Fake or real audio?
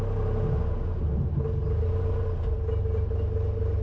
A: real